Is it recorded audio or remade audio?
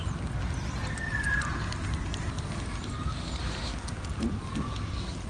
recorded